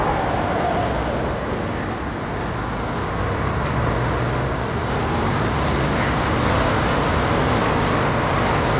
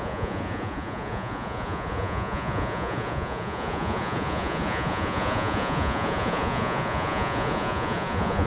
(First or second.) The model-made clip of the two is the second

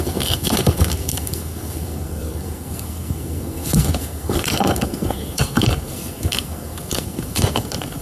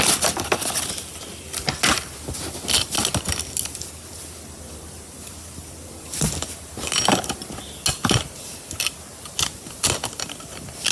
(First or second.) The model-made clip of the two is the first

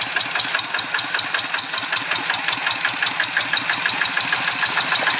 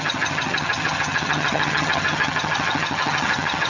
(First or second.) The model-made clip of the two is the second